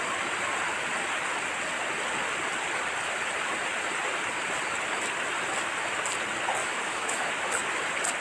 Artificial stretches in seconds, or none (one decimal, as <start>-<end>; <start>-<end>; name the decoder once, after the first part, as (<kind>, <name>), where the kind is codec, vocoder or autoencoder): 6.6-7.3 (autoencoder, DAC-VAE)